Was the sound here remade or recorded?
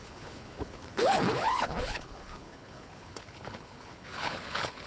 remade